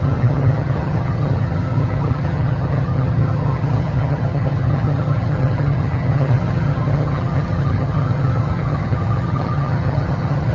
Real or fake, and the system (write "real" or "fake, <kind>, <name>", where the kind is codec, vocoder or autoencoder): fake, vocoder, HiFi-GAN